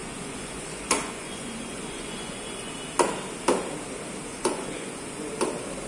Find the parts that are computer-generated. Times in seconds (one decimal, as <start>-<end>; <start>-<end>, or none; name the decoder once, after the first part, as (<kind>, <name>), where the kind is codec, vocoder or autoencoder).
0.0-2.7 (vocoder, Vocos); 4.3-5.3